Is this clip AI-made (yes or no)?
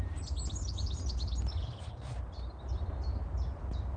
no